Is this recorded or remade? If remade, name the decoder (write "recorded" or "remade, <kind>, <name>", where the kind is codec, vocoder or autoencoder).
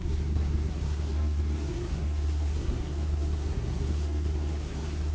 remade, codec, SNAC